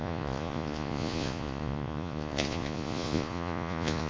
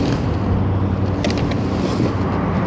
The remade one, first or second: first